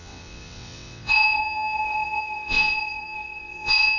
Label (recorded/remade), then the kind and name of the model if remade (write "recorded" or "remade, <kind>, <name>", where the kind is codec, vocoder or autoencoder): remade, vocoder, WaveNeXt